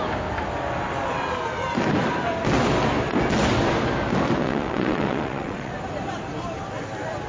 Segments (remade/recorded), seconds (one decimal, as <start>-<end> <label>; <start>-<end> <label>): 0.0-4.4 recorded; 4.4-5.7 remade; 5.7-7.3 recorded